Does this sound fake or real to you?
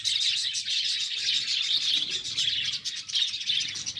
real